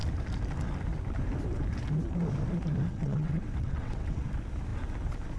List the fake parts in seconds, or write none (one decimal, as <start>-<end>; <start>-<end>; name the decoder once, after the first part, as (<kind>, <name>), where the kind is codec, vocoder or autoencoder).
2.9-4.3 (vocoder, WaveNeXt)